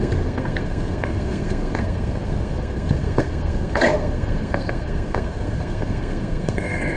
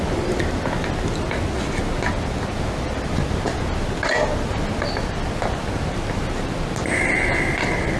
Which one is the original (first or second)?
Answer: second